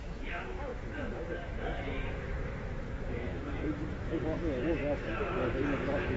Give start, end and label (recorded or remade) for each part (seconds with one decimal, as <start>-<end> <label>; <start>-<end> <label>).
0.0-6.2 remade